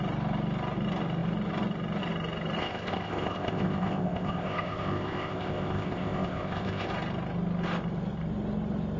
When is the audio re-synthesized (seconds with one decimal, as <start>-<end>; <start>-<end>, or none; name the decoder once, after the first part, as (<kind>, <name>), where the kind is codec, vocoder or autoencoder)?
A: 2.6-6.9 (codec, ZipCodec)